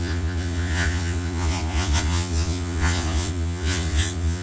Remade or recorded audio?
remade